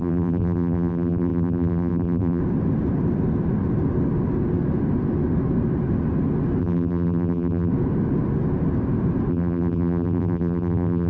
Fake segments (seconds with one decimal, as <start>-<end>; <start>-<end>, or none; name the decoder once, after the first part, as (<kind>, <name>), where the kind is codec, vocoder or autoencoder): 0.0-2.4 (vocoder, BigVGAN v2); 6.6-7.7; 9.3-11.1